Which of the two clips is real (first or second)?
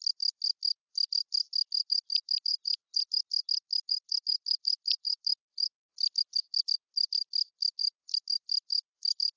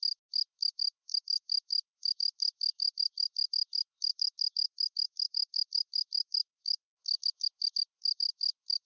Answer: first